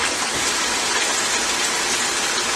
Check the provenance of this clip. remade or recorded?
recorded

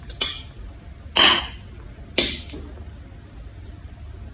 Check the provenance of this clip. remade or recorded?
recorded